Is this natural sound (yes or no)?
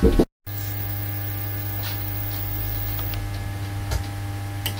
yes